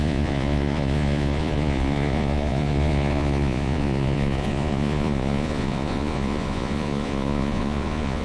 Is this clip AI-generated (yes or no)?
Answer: yes